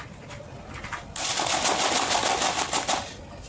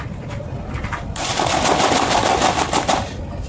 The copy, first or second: second